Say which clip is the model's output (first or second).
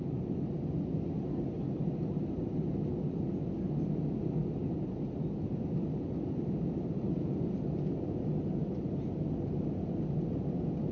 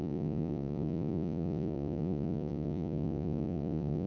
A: second